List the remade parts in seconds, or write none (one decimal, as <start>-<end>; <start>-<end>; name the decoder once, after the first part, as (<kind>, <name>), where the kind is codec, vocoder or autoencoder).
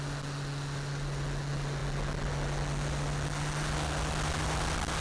none